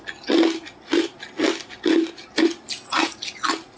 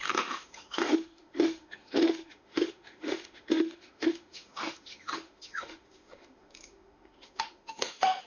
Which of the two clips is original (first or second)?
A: first